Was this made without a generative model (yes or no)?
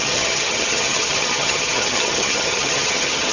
no